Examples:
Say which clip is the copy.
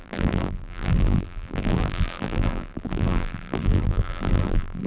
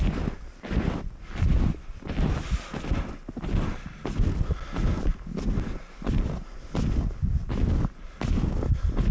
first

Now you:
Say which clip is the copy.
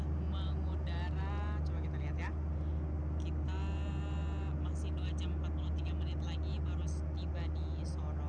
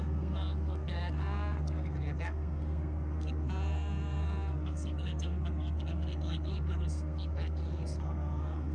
second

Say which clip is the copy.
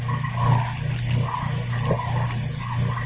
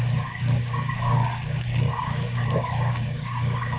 second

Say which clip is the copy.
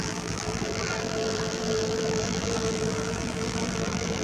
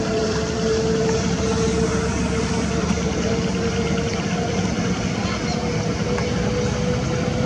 first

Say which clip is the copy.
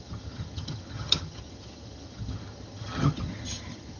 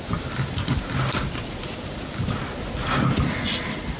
first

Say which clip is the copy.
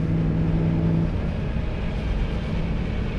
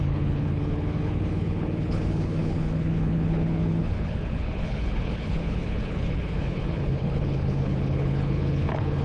second